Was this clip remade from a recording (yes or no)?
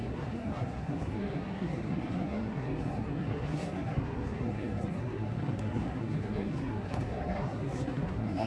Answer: yes